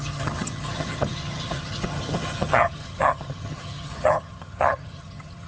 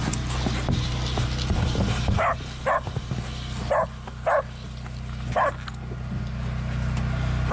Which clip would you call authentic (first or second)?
second